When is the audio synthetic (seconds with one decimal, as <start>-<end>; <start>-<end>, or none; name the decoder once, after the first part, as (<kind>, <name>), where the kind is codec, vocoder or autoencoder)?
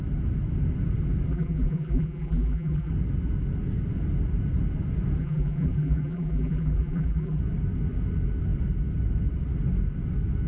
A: 1.3-2.9 (vocoder, BigVGAN v2); 5.2-7.4